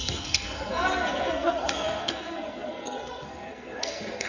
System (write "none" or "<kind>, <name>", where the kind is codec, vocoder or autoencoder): codec, SNAC